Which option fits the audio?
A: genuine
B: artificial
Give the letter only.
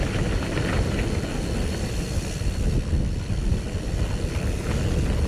A